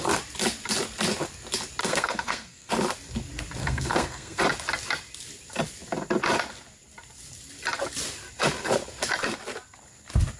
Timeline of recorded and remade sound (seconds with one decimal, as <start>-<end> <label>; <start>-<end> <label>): 0.0-1.8 recorded; 1.8-2.7 remade; 2.7-3.6 recorded; 3.6-4.4 remade; 4.4-10.4 recorded